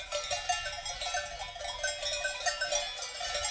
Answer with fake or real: real